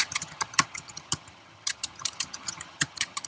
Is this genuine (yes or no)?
no